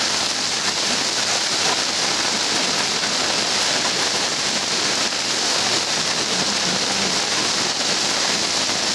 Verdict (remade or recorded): remade